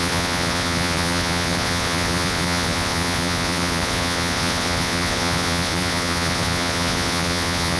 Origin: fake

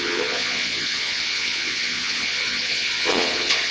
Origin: fake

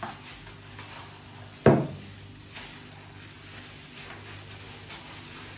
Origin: real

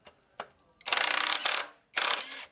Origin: real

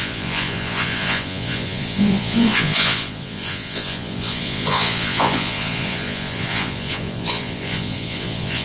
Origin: fake